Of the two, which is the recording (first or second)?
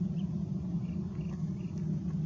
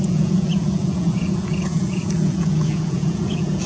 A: first